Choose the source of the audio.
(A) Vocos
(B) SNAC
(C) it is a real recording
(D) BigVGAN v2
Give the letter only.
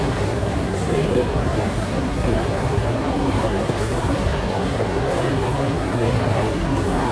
B